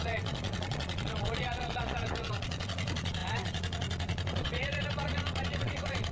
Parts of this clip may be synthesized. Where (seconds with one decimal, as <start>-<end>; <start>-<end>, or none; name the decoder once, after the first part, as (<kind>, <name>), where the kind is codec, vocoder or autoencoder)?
0.0-6.1 (vocoder, Vocos)